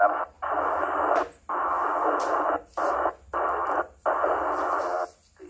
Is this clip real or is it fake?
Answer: fake